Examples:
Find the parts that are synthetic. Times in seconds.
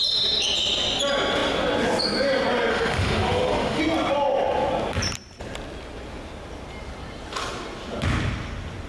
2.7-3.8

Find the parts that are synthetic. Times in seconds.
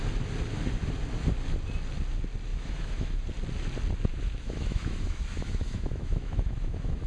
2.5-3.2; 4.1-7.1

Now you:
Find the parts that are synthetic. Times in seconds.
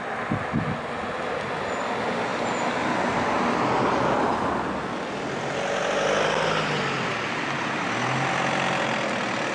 none